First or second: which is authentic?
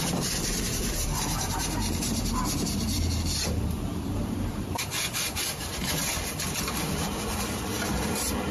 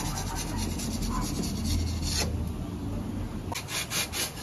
second